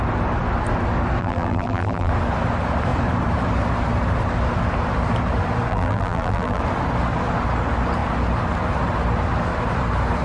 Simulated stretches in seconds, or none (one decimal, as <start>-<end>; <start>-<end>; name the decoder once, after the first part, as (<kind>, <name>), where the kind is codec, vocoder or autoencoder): 1.2-2.1 (vocoder, BigVGAN v2); 5.7-6.6